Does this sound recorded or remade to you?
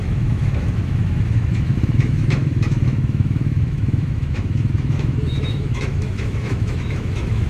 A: remade